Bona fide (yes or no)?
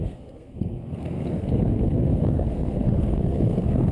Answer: no